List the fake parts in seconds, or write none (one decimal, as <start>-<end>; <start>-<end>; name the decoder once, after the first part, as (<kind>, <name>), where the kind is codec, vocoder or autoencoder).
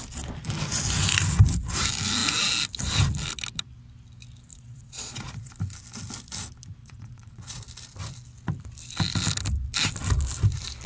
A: 4.5-5.5 (vocoder, Vocos); 6.8-7.6